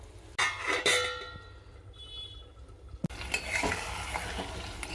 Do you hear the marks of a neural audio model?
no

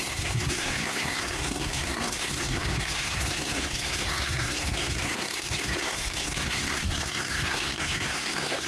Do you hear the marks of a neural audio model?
yes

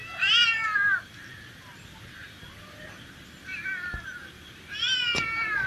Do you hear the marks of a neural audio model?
no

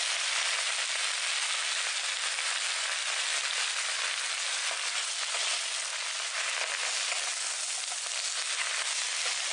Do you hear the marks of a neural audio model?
no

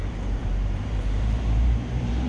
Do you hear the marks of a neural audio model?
yes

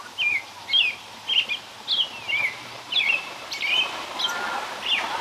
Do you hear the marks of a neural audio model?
no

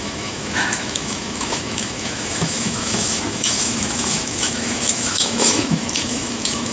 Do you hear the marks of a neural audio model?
yes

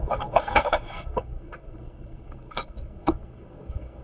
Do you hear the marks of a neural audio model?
yes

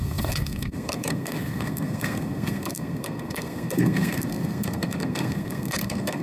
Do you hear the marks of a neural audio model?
yes